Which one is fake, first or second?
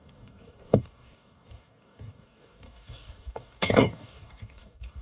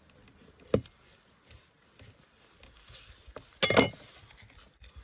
first